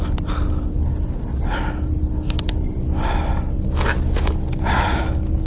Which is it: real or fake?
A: real